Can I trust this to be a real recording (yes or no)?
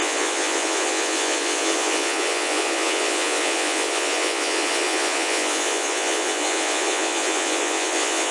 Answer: no